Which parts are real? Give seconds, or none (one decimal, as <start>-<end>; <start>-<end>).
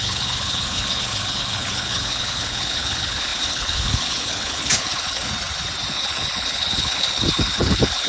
5.3-5.9